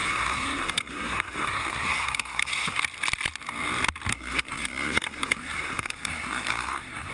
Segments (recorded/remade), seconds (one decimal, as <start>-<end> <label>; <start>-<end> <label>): 0.0-2.8 remade; 2.8-4.1 recorded; 4.1-7.1 remade